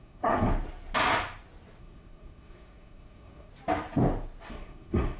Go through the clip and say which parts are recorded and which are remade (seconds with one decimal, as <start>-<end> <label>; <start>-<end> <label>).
0.0-0.5 remade; 0.5-1.8 recorded; 1.8-3.5 remade; 3.5-4.5 recorded; 4.5-5.2 remade